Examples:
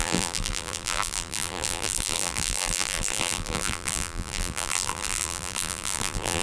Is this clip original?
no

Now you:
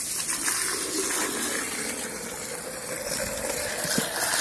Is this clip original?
yes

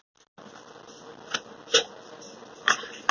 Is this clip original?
yes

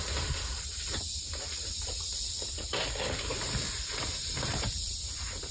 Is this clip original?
no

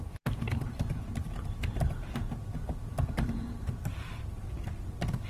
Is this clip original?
no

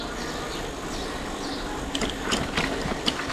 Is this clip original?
yes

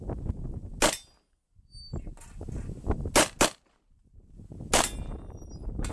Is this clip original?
yes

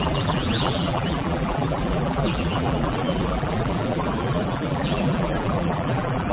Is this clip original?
no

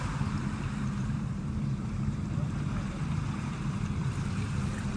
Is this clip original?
no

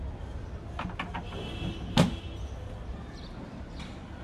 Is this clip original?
yes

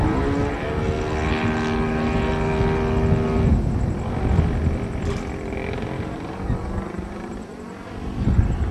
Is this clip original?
yes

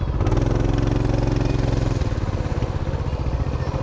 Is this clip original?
yes